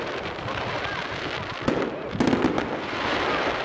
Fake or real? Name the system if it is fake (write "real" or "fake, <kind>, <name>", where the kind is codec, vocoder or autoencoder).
real